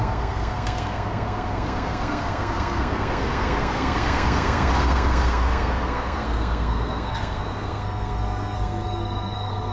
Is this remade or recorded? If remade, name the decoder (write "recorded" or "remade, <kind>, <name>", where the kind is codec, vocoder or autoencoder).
remade, codec, SNAC